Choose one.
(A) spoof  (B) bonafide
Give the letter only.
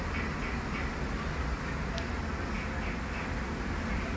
B